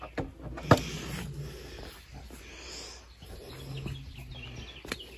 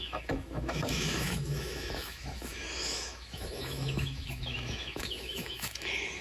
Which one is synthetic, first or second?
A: second